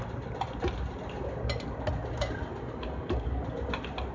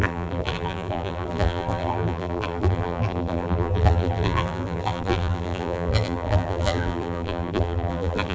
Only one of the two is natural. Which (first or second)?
first